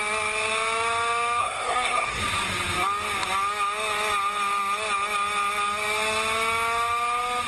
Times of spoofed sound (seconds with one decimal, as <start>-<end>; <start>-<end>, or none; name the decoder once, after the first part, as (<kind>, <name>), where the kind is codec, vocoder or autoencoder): 1.4-2.2 (codec, SNAC)